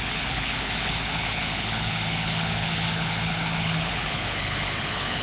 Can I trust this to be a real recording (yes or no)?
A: no